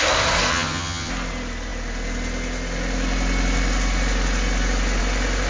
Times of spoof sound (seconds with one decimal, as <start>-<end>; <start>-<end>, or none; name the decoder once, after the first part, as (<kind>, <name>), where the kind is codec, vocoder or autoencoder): 0.5-1.1 (vocoder, HiFi-GAN)